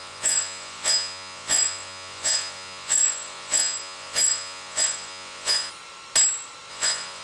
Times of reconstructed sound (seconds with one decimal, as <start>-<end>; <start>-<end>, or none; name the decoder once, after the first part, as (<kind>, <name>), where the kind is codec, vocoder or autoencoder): 0.0-5.7 (vocoder, Vocos); 6.7-7.2